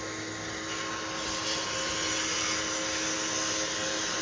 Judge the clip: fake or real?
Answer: real